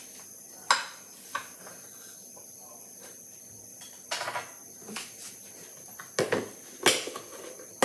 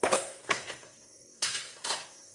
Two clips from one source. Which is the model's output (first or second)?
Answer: second